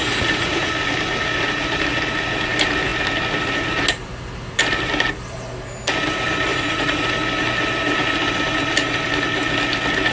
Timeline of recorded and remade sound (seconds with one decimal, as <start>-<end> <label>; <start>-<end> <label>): 0.0-0.7 remade; 0.7-6.5 recorded; 6.5-7.1 remade; 7.1-10.1 recorded